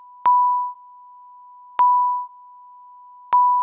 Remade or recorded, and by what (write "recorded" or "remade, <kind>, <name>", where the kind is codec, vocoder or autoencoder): recorded